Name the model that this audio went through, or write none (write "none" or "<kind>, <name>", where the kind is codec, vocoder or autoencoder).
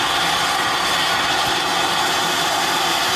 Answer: none